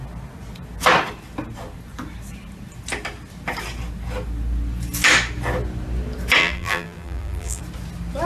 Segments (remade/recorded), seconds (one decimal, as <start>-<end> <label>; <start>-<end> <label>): 0.0-6.4 recorded; 6.4-7.6 remade; 7.6-8.3 recorded